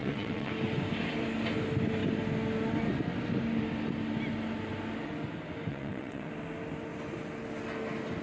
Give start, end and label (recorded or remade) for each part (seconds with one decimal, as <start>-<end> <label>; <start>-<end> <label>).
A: 0.0-0.5 remade; 0.5-5.7 recorded; 5.7-6.3 remade; 6.3-8.2 recorded